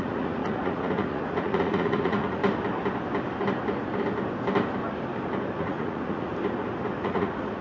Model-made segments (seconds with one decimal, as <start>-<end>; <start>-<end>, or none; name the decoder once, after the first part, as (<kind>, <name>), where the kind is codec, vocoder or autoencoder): 0.0-2.4 (vocoder, Vocos); 5.6-6.3; 7.0-7.6